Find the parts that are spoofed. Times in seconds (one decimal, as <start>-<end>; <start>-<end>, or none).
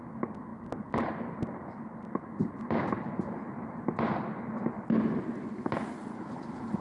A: none